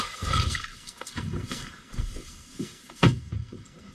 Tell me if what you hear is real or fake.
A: fake